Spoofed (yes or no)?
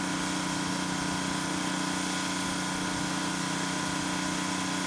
no